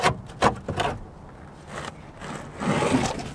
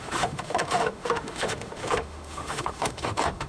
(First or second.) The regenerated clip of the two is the second